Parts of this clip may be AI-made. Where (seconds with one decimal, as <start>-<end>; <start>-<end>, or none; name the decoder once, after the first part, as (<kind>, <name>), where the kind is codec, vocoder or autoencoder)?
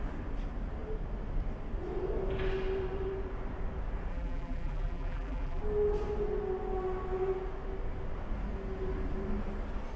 4.1-5.6 (vocoder, BigVGAN v2)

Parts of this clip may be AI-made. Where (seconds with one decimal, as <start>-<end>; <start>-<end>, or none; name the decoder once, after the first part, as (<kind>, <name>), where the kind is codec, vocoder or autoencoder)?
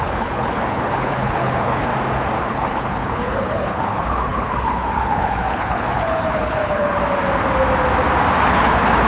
0.0-1.9 (codec, HILCodec); 2.4-7.0; 8.4-9.1